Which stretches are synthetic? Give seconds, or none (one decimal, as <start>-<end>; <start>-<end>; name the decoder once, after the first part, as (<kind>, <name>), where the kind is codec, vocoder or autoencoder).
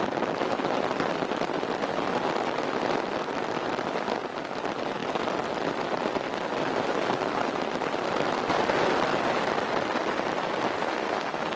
10.8-11.6 (codec, SNAC)